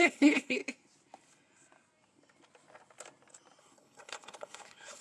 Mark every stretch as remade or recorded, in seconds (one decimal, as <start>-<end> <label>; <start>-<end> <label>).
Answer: 0.0-0.6 remade; 0.6-3.6 recorded; 3.6-5.0 remade